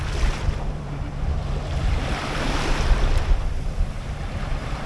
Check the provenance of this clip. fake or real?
fake